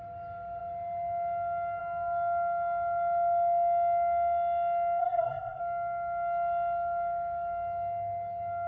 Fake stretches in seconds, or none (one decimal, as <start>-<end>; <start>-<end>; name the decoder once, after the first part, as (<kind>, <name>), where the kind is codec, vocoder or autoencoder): 5.0-5.6 (codec, SNAC)